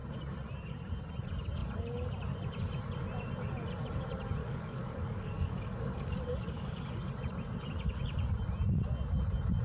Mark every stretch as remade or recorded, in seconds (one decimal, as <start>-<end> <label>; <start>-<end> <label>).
0.0-4.4 recorded; 4.4-6.8 remade; 6.8-9.6 recorded